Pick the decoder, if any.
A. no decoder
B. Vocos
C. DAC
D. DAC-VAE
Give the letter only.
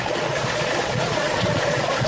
B